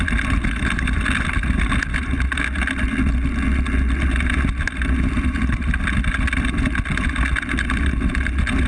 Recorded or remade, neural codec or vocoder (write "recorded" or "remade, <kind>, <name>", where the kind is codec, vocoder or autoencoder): recorded